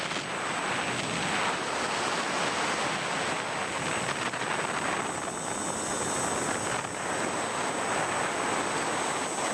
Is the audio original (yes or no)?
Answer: yes